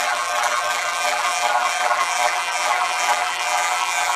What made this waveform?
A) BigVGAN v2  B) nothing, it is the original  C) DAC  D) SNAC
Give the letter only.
A